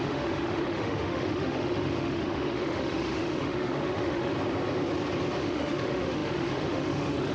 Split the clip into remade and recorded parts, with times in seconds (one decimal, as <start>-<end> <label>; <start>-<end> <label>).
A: 0.0-4.3 remade; 4.3-5.4 recorded; 5.4-7.3 remade